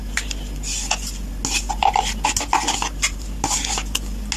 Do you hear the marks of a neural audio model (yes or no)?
no